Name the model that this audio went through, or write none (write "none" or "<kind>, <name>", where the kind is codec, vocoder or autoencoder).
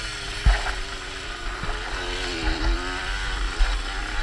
none